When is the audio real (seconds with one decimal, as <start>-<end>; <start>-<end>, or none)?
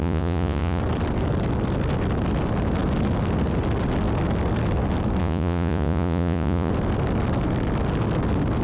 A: 0.8-5.2; 6.7-8.6